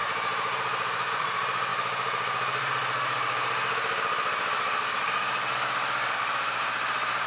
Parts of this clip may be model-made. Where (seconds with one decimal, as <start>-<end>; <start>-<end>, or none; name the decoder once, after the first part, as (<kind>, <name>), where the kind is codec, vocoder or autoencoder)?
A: 0.0-1.7 (vocoder, BigVGAN v2); 6.1-7.3